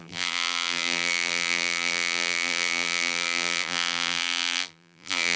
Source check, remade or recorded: remade